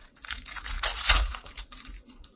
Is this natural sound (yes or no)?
no